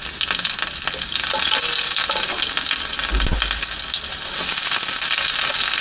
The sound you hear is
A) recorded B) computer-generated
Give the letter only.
A